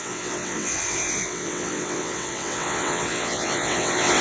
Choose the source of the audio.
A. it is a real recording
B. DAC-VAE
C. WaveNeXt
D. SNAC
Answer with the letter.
C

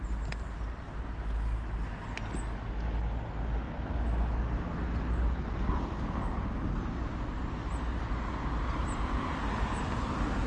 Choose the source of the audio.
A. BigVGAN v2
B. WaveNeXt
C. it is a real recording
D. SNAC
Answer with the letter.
C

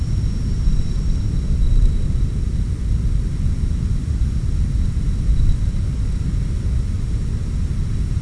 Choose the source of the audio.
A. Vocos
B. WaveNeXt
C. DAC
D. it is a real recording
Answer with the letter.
D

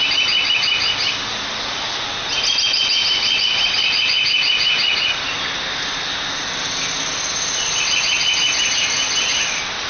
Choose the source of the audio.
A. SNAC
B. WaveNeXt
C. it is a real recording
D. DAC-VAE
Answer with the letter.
C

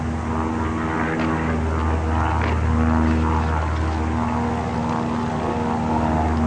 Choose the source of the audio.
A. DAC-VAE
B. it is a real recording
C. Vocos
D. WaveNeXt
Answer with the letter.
B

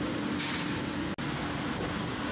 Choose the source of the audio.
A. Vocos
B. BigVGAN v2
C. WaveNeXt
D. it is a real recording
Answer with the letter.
D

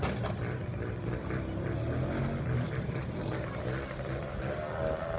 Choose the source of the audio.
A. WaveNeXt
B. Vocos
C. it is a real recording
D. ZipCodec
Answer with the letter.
C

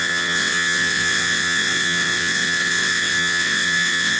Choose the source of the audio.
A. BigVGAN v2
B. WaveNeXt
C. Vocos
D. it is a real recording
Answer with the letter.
B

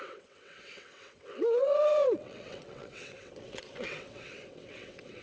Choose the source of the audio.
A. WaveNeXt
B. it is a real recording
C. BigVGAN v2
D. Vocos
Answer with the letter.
A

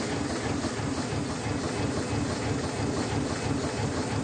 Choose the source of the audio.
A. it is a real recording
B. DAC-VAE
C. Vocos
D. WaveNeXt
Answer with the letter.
A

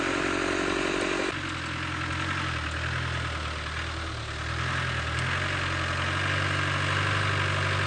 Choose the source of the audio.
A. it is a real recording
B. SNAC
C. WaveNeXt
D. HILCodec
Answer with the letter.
A